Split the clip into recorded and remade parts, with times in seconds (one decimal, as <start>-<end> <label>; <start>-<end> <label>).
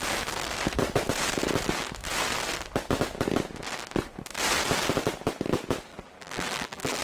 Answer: 0.0-5.9 recorded; 5.9-7.0 remade